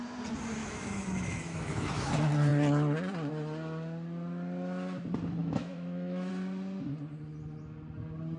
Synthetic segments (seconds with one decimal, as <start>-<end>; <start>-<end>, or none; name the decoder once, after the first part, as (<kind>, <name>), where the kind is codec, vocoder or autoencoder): 0.6-2.1 (autoencoder, DAC-VAE); 5.4-6.3